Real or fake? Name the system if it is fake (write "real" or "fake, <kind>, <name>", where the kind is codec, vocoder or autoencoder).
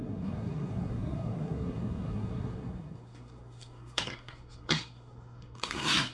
fake, codec, SNAC